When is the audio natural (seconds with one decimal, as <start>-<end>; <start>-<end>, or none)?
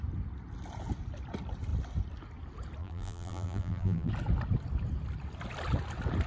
0.0-2.8; 4.1-6.3